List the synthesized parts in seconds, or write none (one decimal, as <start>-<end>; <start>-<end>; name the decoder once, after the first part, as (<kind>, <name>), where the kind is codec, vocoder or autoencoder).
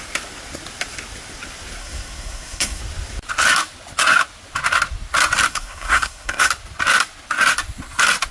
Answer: 1.8-2.8 (codec, SNAC); 5.5-6.5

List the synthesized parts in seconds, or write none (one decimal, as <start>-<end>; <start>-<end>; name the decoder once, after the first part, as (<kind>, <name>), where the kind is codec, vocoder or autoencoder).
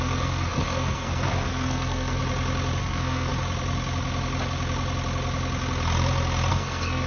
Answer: 0.0-2.2 (codec, SNAC); 2.8-3.3; 6.5-7.1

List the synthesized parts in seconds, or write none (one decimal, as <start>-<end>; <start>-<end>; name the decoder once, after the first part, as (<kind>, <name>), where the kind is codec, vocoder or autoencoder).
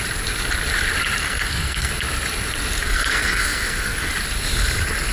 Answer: 1.2-1.9 (codec, SNAC); 2.8-4.1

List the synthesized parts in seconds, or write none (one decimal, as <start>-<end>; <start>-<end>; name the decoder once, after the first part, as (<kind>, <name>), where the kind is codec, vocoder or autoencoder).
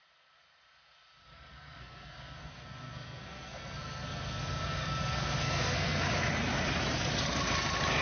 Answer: 1.2-6.0 (codec, SNAC)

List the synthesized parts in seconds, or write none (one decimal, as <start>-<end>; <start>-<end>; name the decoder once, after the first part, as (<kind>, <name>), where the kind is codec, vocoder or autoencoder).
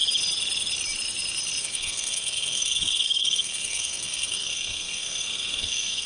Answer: 1.6-6.1 (codec, SNAC)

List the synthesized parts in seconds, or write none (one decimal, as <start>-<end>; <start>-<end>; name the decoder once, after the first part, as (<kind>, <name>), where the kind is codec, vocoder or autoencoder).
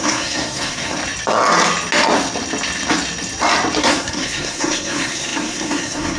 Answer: 0.0-1.0 (codec, SNAC); 3.8-6.2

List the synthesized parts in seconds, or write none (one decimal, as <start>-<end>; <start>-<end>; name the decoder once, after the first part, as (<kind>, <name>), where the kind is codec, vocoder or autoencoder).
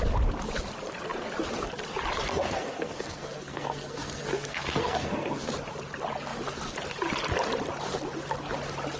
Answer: 2.3-5.5 (codec, SNAC)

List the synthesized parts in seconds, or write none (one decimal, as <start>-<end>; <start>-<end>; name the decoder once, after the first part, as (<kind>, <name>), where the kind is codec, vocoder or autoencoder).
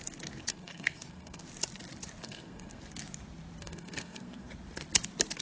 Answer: 0.5-1.4 (codec, SNAC); 2.2-2.8; 3.6-4.5